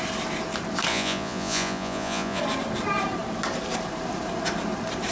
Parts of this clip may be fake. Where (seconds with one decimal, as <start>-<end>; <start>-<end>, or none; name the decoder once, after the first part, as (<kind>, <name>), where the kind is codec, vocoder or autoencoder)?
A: 0.9-2.4 (vocoder, Vocos)